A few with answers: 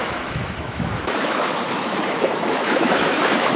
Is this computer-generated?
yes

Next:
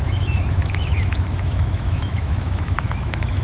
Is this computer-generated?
yes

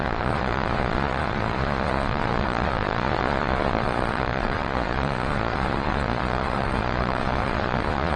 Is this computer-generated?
yes